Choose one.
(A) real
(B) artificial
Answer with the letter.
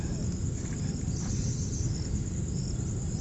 A